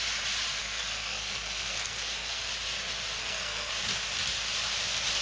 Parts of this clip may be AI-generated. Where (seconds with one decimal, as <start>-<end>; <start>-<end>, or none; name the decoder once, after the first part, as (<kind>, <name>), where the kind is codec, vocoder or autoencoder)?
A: 0.6-2.5 (codec, SNAC); 3.2-3.7